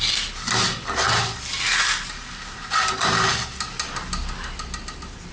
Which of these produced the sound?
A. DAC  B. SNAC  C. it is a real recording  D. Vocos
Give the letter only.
C